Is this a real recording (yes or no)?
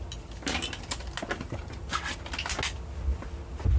yes